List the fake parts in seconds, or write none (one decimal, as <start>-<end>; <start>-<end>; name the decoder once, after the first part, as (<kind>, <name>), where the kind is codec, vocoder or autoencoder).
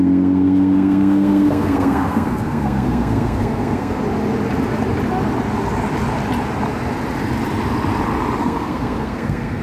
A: 0.0-4.0 (codec, SNAC); 8.4-9.6